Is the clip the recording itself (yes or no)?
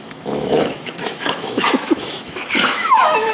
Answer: no